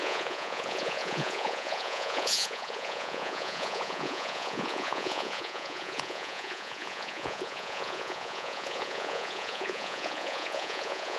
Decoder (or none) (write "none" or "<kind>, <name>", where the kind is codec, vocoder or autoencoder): vocoder, Vocos